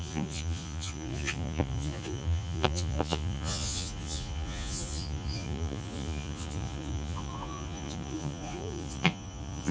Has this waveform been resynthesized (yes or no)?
yes